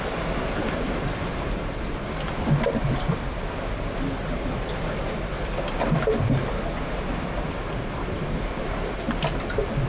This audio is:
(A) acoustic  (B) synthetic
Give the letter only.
A